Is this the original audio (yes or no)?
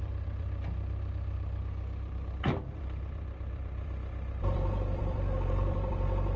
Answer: no